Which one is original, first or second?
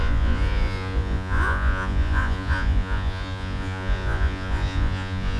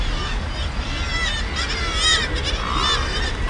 second